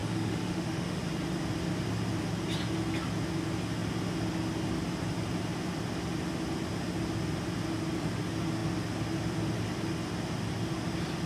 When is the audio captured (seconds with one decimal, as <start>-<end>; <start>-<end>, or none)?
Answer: 1.0-11.3